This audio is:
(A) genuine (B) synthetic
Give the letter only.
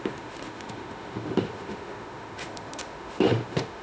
B